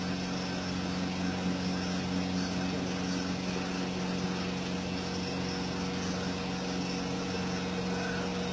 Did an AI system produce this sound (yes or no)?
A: no